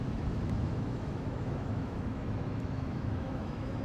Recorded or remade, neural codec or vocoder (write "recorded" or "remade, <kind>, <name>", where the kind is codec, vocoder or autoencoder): remade, autoencoder, DAC-VAE